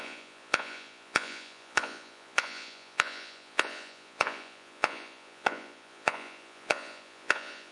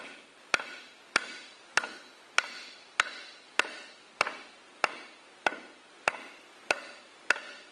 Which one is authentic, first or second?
second